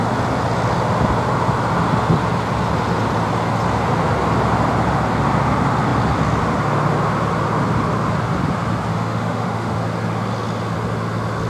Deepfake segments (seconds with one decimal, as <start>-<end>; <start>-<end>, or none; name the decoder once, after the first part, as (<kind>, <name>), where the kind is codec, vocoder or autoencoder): 8.9-9.8 (autoencoder, DAC-VAE)